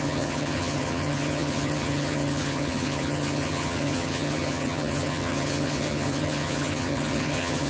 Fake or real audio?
fake